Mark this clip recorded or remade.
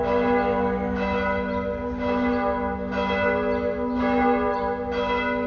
recorded